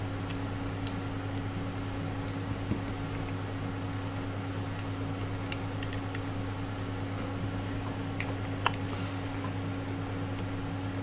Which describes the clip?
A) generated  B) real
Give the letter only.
B